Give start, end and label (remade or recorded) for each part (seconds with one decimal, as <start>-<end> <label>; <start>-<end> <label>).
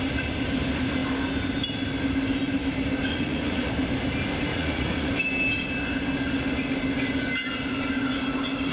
0.0-3.1 recorded; 3.1-3.7 remade; 3.7-4.5 recorded; 4.5-5.1 remade; 5.1-8.7 recorded